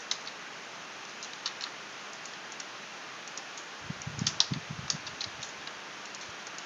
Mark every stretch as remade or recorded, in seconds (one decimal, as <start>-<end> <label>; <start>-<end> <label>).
0.0-6.7 recorded